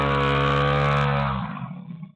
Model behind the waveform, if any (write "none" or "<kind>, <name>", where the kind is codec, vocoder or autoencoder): none